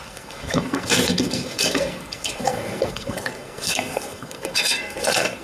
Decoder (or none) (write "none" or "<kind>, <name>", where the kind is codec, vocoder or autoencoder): codec, SNAC